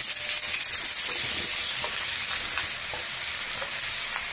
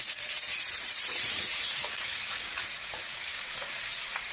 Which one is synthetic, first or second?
second